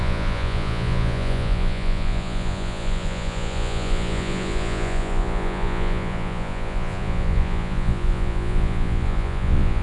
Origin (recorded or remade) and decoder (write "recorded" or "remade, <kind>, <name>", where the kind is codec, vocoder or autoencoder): remade, vocoder, Vocos